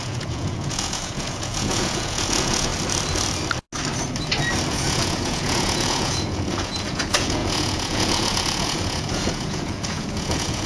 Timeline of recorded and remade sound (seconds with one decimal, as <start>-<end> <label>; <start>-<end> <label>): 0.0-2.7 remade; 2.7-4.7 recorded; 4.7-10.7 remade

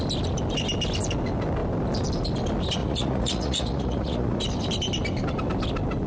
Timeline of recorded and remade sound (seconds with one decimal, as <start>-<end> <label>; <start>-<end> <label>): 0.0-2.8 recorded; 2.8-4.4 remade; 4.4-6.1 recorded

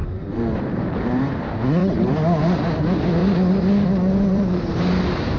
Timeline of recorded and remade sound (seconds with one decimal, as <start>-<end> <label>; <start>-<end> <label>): 0.0-1.8 remade; 1.8-2.8 recorded; 2.8-3.2 remade; 3.2-4.2 recorded; 4.2-5.4 remade